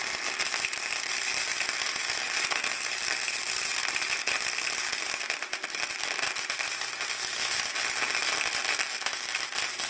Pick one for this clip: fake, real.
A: real